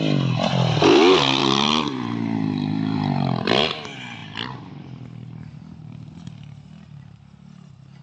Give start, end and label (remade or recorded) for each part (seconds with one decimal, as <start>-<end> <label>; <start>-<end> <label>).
0.0-1.4 recorded; 1.4-3.5 remade; 3.5-8.0 recorded